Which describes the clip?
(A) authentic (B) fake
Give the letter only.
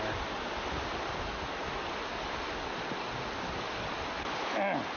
A